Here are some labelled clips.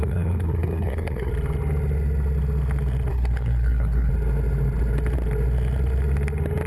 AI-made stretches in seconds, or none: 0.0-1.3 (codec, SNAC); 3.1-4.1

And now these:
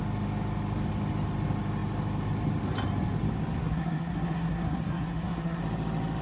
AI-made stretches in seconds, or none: 3.6-5.6 (codec, SNAC)

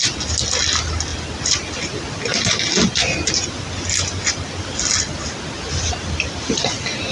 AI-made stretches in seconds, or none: none

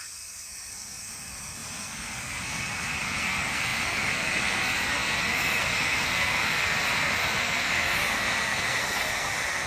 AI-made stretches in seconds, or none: 0.0-9.7 (codec, SNAC)

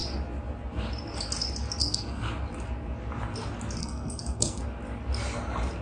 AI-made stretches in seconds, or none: 1.8-2.3 (codec, SNAC); 3.8-4.6

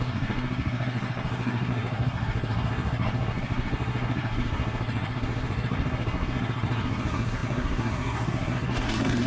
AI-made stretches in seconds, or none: 0.0-9.3 (codec, SNAC)

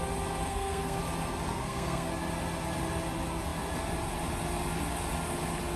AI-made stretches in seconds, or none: 0.5-1.0 (codec, SNAC); 1.5-2.1